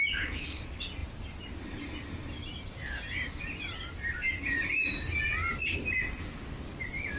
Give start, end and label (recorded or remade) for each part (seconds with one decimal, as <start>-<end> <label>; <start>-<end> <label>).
0.0-7.2 recorded